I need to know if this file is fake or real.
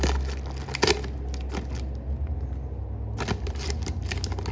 real